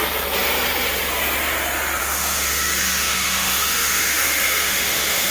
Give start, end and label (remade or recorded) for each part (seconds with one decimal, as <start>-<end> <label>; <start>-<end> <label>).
0.0-2.0 recorded; 2.0-5.3 remade